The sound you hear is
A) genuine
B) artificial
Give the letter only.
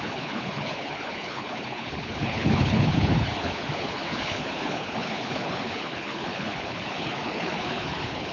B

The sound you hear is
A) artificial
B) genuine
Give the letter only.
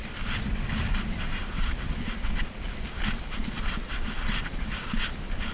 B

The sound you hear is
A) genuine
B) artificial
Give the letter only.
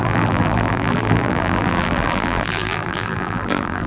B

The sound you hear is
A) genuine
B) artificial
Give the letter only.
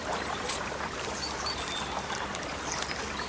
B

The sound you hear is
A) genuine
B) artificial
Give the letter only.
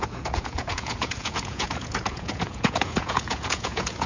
B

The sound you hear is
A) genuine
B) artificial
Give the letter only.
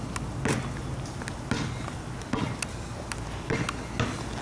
A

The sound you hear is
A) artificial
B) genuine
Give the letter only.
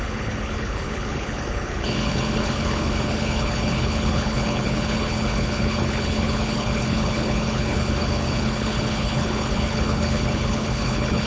A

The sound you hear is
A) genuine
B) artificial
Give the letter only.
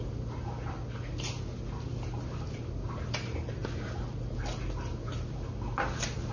A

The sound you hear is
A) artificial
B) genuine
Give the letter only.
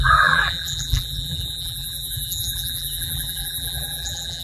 A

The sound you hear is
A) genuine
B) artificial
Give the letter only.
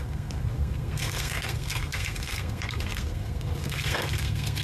B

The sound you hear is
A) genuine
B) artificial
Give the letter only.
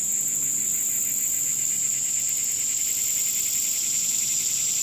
A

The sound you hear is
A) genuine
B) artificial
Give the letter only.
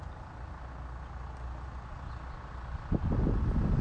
A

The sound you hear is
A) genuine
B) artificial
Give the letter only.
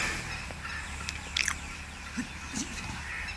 A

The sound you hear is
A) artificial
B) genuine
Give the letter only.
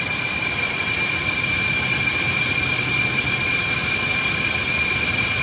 A